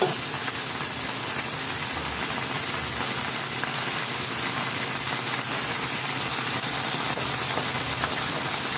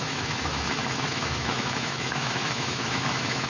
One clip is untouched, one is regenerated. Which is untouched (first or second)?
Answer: first